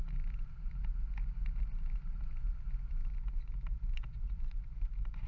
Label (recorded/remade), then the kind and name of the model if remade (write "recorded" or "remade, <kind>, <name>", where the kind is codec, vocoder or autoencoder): recorded